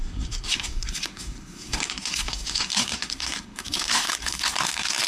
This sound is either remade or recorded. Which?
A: remade